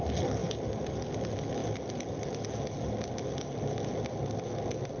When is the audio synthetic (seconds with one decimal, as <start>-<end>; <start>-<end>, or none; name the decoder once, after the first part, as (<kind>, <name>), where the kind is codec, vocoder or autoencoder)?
none